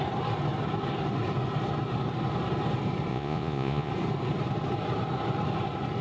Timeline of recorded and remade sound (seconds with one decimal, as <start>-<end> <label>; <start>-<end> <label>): 0.0-3.1 recorded; 3.1-3.9 remade; 3.9-6.0 recorded